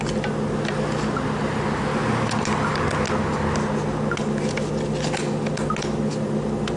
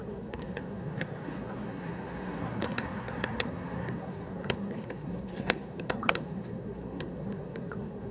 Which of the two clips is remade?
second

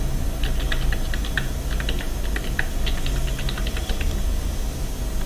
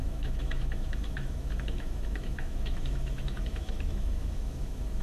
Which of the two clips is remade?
second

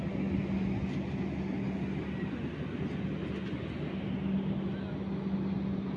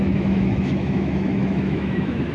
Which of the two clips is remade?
second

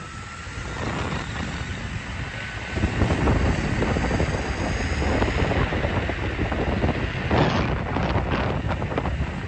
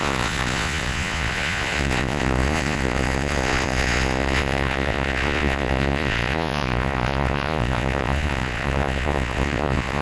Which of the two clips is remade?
second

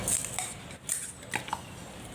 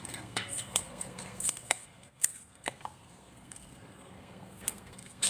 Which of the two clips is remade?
second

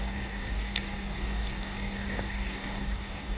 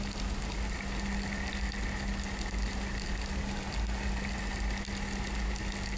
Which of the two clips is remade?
first